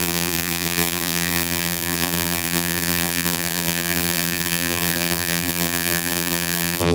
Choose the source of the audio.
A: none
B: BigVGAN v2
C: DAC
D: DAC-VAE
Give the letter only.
B